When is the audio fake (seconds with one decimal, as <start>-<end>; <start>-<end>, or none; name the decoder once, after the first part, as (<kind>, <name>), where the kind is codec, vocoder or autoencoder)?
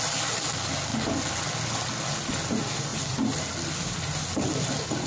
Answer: 2.9-3.5 (vocoder, BigVGAN v2)